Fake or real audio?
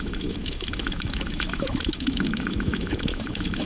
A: fake